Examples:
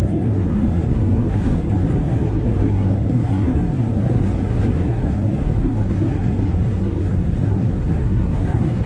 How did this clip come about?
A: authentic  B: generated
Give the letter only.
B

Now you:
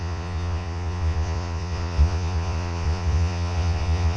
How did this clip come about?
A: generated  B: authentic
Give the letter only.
A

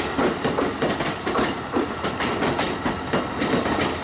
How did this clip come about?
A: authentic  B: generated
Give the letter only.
A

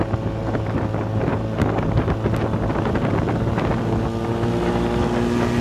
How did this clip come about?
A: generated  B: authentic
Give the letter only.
B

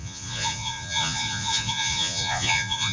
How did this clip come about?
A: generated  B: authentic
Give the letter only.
A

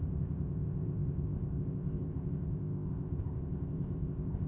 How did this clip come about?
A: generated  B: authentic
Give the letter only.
A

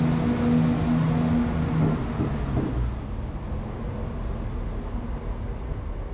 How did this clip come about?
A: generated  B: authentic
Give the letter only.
B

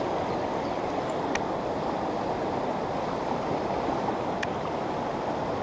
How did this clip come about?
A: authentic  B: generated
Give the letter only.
A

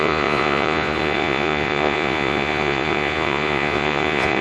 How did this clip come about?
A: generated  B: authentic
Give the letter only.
A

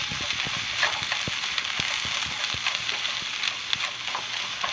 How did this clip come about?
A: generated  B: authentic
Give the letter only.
B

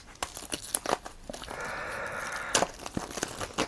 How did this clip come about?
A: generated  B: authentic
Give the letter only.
B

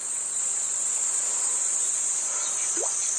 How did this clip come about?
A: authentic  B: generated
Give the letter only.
B